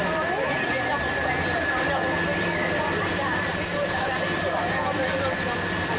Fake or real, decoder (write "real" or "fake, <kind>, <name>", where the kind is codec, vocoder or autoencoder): fake, vocoder, BigVGAN v2